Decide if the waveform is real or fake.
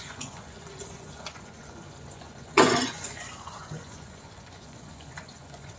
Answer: fake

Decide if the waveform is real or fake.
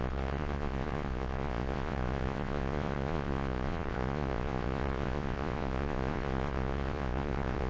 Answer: fake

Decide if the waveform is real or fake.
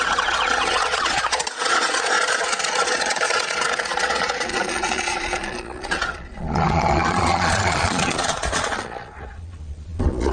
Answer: fake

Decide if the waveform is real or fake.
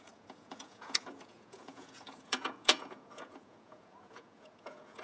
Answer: fake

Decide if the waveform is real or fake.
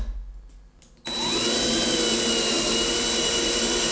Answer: real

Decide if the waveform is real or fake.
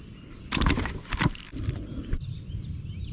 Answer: real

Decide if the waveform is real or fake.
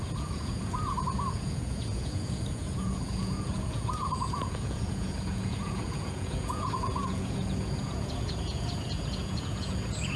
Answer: fake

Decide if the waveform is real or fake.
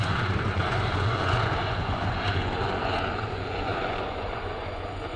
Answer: fake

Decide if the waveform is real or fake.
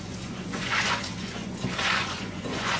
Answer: fake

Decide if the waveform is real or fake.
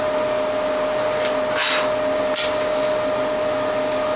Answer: real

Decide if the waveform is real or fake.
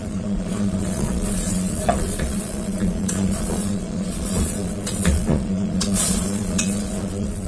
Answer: fake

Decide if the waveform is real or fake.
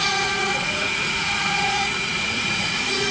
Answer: fake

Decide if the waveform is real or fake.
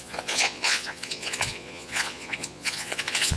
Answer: fake